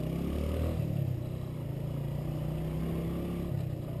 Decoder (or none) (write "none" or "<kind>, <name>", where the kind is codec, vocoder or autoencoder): none